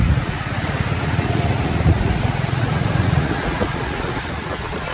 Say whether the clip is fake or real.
fake